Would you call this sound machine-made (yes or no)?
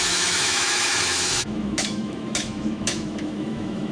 yes